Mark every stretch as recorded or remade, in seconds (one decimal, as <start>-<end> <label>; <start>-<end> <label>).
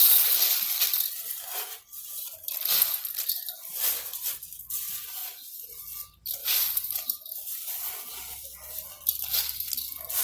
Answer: 0.0-5.2 recorded; 5.2-5.9 remade; 5.9-6.4 recorded; 6.4-7.9 remade; 7.9-10.2 recorded